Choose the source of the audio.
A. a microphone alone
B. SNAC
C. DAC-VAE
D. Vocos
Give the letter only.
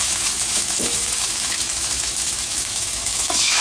C